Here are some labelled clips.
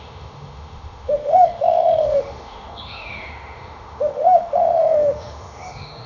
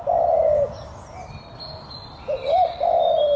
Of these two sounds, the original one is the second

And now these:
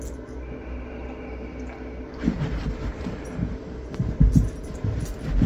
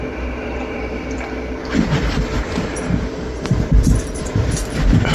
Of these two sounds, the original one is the first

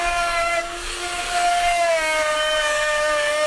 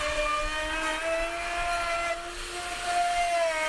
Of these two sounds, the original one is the second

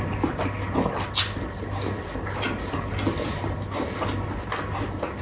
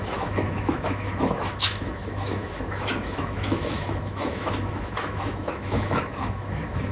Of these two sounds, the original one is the first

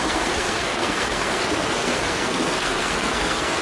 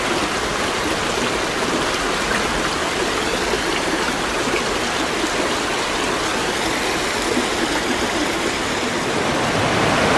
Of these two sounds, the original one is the second